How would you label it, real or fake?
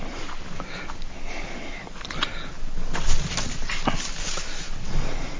real